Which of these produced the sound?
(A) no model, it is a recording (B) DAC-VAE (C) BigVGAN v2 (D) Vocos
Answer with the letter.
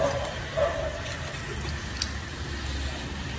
A